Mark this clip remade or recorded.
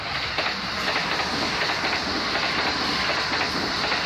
recorded